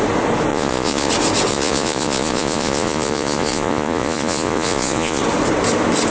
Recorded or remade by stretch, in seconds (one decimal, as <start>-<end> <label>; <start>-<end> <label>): 0.0-0.5 recorded; 0.5-1.1 remade; 1.1-1.5 recorded; 1.5-5.2 remade; 5.2-6.1 recorded